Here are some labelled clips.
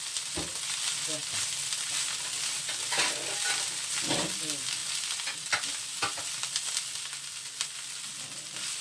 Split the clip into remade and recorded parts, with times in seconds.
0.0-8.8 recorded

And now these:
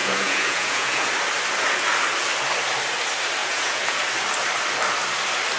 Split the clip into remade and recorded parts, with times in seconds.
0.0-1.1 remade; 1.1-3.4 recorded; 3.4-4.0 remade; 4.0-5.6 recorded

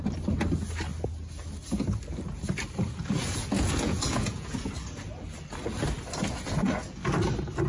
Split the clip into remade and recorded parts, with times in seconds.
0.0-3.2 recorded; 3.2-4.6 remade; 4.6-7.7 recorded

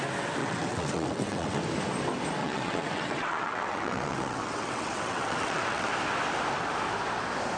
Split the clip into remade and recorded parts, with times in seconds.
0.0-0.4 recorded; 0.4-1.6 remade; 1.6-2.4 recorded; 2.4-5.9 remade; 5.9-7.6 recorded

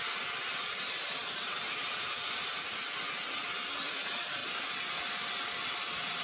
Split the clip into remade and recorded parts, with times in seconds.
0.0-1.2 remade; 1.2-3.8 recorded; 3.8-4.4 remade; 4.4-6.2 recorded

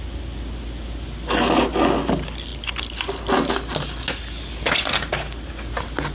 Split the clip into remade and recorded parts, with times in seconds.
0.0-6.1 recorded

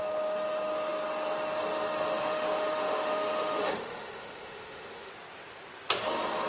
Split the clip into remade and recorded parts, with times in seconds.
0.0-2.2 recorded; 2.2-5.1 remade; 5.1-6.5 recorded